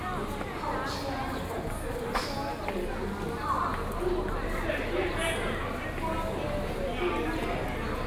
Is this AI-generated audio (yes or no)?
no